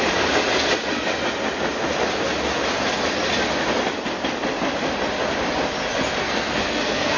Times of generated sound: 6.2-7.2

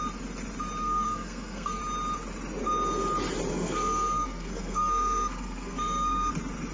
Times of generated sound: 0.8-1.8; 3.5-6.3

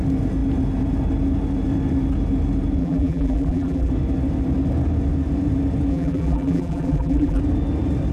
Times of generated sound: 2.8-3.9; 5.9-7.4

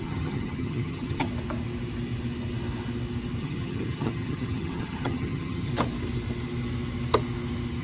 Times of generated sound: 0.0-1.3; 3.4-5.7

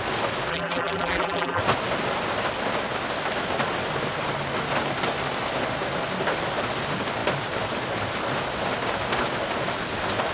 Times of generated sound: 0.5-1.6

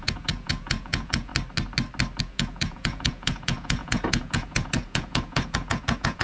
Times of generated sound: 0.0-1.3; 2.2-6.2